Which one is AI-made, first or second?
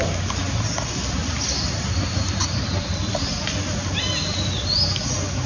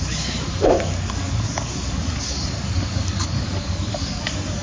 second